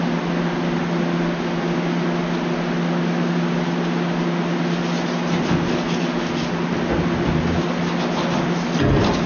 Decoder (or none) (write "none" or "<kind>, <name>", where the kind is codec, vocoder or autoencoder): none